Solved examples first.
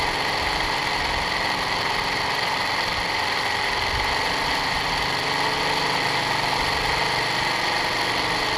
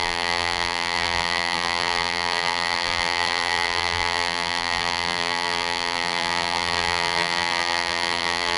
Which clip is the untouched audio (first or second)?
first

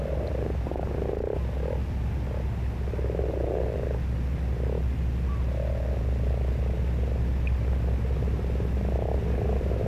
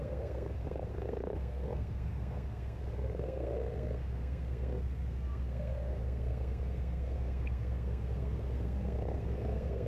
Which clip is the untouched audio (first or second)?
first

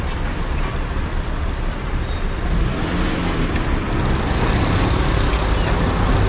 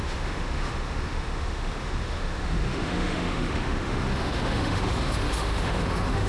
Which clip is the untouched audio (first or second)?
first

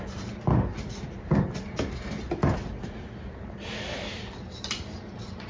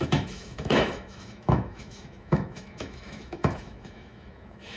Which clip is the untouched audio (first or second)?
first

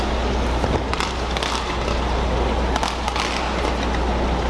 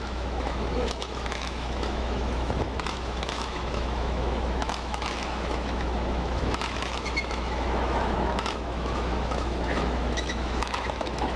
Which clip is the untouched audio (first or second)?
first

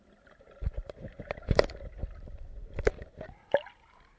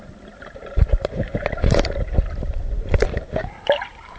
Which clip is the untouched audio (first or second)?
first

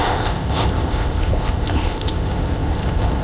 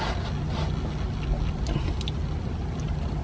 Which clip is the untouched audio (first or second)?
second